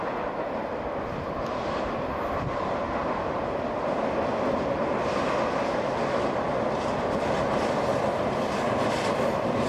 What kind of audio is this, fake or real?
real